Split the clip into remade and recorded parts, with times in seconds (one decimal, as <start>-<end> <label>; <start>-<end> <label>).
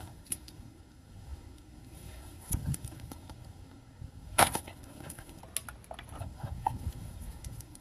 0.0-5.4 remade; 5.4-6.2 recorded; 6.2-7.8 remade